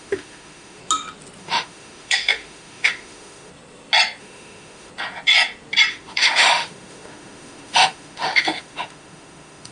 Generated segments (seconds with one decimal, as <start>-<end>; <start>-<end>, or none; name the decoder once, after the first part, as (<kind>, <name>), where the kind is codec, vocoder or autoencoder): 0.0-0.8 (autoencoder, DAC-VAE); 1.4-3.5; 4.2-4.9; 5.9-9.7